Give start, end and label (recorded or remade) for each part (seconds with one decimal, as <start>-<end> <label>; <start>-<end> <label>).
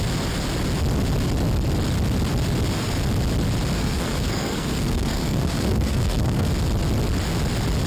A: 0.0-3.8 recorded; 3.8-6.5 remade; 6.5-7.9 recorded